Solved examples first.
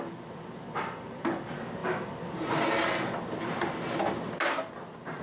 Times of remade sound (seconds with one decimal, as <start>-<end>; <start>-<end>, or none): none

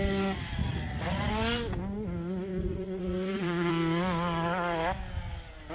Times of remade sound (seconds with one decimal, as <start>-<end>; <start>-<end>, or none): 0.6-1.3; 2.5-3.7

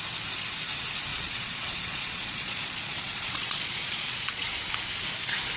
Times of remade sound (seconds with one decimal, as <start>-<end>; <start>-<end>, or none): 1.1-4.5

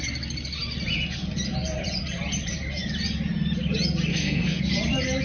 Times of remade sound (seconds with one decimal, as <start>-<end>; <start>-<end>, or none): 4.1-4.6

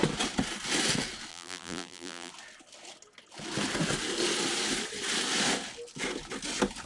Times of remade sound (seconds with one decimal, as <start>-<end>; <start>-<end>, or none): 1.3-2.3

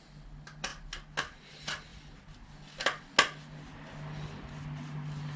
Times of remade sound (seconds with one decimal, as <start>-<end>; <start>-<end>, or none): none

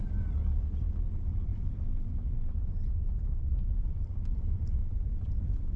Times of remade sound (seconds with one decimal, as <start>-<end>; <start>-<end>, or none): 0.0-4.8